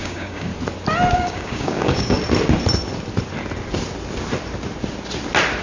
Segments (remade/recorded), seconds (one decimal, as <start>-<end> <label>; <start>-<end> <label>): 0.0-0.5 remade; 0.5-1.1 recorded; 1.1-2.2 remade; 2.2-5.6 recorded